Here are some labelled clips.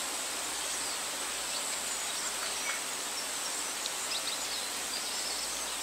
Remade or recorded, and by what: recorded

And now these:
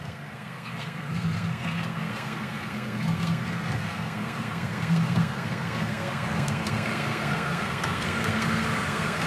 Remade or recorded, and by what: remade, codec, SNAC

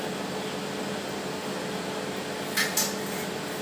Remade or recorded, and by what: recorded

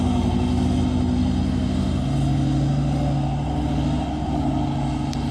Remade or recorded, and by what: recorded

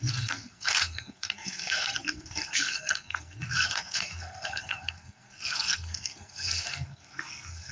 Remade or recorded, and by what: remade, codec, SNAC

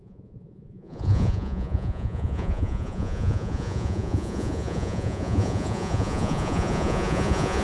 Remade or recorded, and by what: remade, vocoder, Vocos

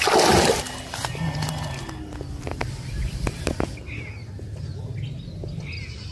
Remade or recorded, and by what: recorded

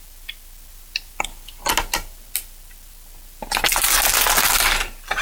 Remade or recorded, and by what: recorded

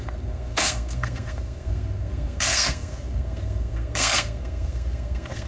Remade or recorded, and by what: remade, codec, SNAC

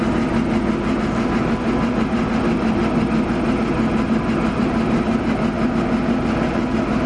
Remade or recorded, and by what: recorded